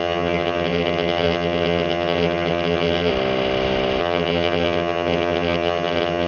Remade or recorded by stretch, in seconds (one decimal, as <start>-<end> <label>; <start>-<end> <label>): 0.0-3.1 remade; 3.1-4.0 recorded; 4.0-6.3 remade